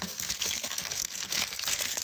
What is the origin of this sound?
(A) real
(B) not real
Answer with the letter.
B